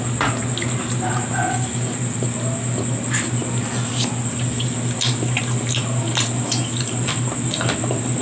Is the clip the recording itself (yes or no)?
yes